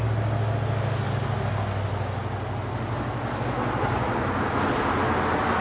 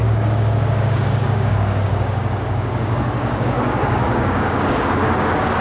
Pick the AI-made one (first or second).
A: second